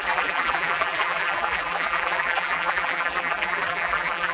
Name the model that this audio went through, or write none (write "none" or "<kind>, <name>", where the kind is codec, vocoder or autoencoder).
vocoder, BigVGAN v2